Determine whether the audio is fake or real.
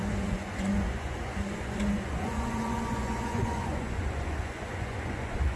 fake